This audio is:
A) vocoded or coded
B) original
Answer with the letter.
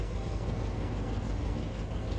A